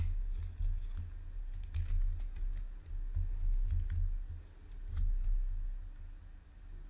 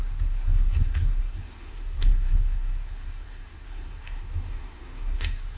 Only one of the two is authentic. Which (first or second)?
first